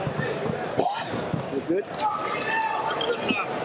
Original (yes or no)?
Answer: no